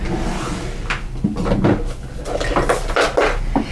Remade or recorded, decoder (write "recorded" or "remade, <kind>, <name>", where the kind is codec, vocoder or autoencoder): recorded